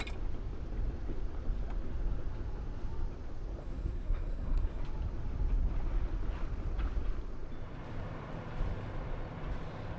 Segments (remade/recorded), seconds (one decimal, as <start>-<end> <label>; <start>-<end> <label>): 0.0-3.6 recorded; 3.6-4.8 remade; 4.8-10.0 recorded